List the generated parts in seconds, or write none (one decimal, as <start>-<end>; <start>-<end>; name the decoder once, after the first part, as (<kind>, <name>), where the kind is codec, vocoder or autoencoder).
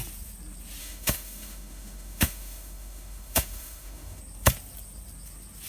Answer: 0.8-4.2 (autoencoder, DAC-VAE)